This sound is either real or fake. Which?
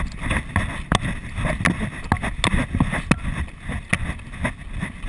real